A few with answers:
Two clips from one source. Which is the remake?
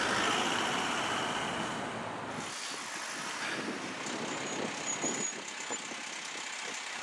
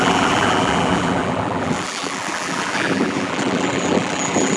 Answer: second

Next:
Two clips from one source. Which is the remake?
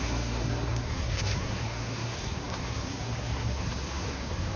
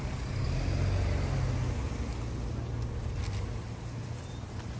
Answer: first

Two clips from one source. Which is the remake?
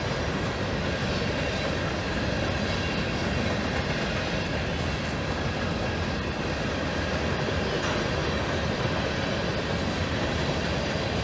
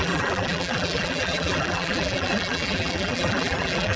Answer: second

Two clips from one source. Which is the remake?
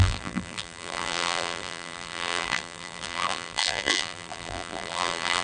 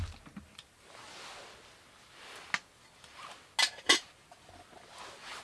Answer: first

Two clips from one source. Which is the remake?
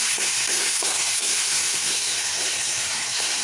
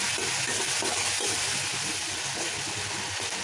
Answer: first